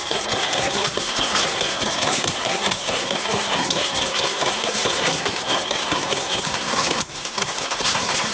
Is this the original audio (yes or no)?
no